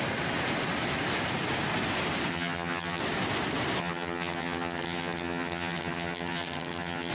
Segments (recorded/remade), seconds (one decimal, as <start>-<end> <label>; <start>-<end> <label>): 0.0-2.3 recorded; 2.3-3.0 remade; 3.0-3.8 recorded; 3.8-7.1 remade